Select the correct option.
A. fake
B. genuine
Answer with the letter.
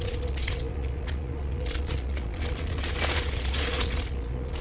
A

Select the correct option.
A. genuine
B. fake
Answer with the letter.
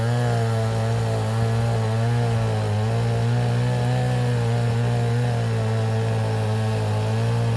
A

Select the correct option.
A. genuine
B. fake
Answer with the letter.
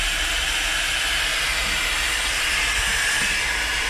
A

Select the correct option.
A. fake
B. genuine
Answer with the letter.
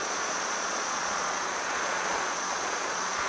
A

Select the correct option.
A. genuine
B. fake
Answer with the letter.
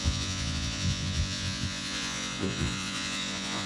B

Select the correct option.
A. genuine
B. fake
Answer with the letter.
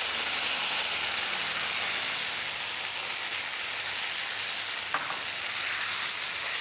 A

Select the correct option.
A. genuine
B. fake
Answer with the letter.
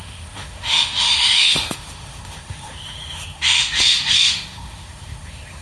B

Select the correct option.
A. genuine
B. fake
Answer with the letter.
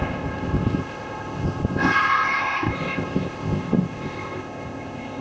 B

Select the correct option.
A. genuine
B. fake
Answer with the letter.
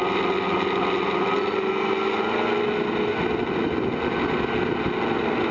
A